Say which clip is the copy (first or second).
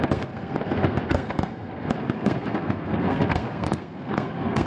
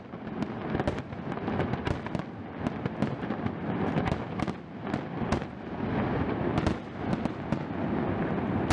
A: first